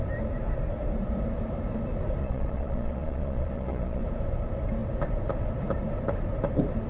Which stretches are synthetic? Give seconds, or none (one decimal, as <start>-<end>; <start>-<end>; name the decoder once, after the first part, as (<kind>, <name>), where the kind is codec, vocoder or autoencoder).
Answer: 2.2-4.0 (vocoder, Vocos)